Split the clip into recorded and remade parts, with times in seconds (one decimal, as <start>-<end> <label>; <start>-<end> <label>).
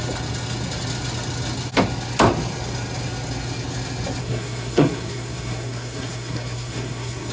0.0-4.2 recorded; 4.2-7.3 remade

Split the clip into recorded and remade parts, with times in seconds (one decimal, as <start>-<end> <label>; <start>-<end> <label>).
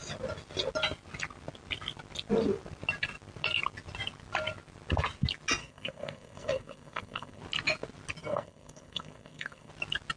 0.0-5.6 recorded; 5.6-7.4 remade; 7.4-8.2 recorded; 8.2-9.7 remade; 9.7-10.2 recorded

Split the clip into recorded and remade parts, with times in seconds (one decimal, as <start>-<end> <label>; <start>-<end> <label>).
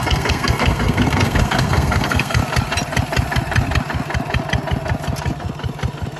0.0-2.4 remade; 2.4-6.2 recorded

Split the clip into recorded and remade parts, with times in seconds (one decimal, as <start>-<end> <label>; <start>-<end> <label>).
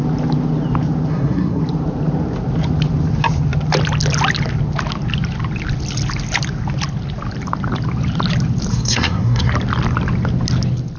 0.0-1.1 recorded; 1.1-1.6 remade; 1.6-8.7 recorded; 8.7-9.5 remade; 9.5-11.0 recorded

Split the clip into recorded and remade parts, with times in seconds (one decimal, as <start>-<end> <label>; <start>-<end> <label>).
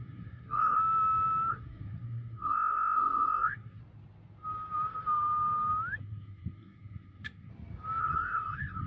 0.0-0.8 remade; 0.8-1.5 recorded; 1.5-3.8 remade; 3.8-6.0 recorded; 6.0-7.5 remade; 7.5-8.0 recorded; 8.0-8.9 remade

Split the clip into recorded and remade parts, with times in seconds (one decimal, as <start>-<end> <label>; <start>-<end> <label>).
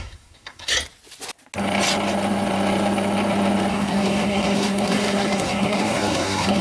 0.0-0.7 remade; 0.7-3.7 recorded; 3.7-6.6 remade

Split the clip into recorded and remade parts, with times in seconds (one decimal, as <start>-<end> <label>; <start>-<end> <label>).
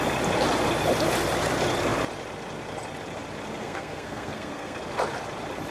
0.0-3.6 recorded; 3.6-4.8 remade; 4.8-5.7 recorded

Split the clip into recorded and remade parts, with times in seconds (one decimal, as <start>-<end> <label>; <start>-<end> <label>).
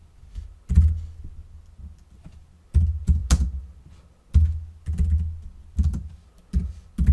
0.0-7.1 recorded